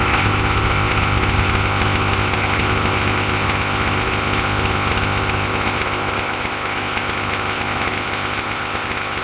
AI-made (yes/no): yes